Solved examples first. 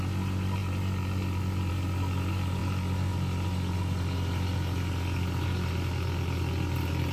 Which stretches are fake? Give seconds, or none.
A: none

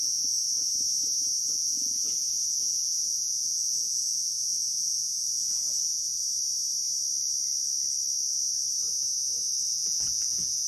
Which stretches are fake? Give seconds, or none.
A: 0.0-0.7 (vocoder, Vocos); 1.4-6.2; 9.7-10.7

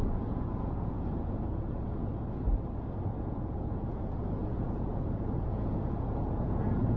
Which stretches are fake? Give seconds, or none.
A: 0.0-2.1 (vocoder, Vocos); 3.2-7.0

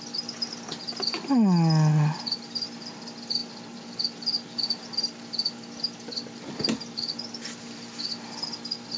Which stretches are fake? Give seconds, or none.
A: none

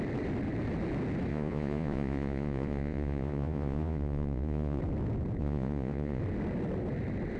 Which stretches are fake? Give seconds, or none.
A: 1.3-4.8 (vocoder, Vocos); 5.4-6.2

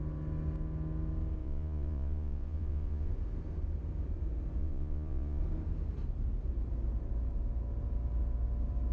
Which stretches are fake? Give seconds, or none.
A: 1.4-3.1 (vocoder, Vocos); 4.6-5.4

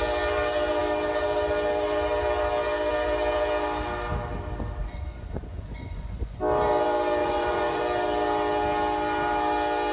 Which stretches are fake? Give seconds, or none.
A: 4.8-6.4 (vocoder, Vocos); 7.2-7.8

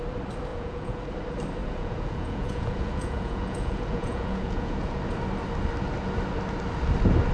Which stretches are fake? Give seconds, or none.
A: 0.5-1.0 (vocoder, Vocos); 1.6-5.0